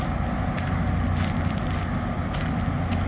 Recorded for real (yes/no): yes